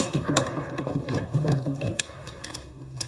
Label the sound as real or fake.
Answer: fake